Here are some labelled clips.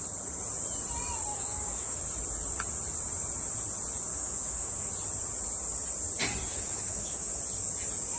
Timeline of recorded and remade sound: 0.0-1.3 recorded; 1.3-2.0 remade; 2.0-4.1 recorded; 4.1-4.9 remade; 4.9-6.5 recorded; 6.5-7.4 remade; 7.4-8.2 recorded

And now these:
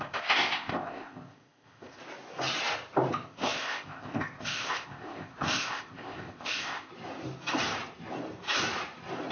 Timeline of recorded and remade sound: 0.0-2.0 remade; 2.0-3.1 recorded; 3.1-6.9 remade; 6.9-9.3 recorded

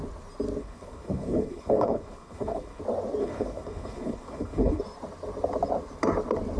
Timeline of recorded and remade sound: 0.0-0.6 recorded; 0.6-2.8 remade; 2.8-3.2 recorded; 3.2-4.8 remade; 4.8-6.6 recorded

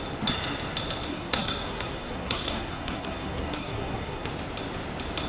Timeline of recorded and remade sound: 0.0-1.1 recorded; 1.1-4.3 remade; 4.3-5.3 recorded

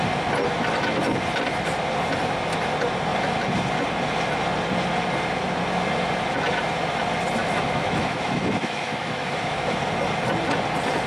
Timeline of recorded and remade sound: 0.0-7.4 recorded; 7.4-9.8 remade; 9.8-11.1 recorded

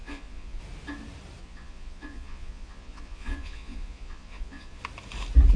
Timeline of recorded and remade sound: 0.0-0.6 remade; 0.6-1.4 recorded; 1.4-4.8 remade; 4.8-5.6 recorded

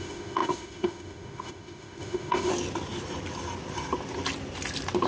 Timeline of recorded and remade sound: 0.0-2.5 remade; 2.5-5.1 recorded

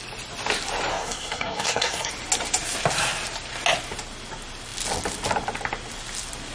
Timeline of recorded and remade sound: 0.0-0.9 recorded; 0.9-2.1 remade; 2.1-6.5 recorded